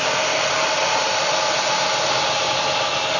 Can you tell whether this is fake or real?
real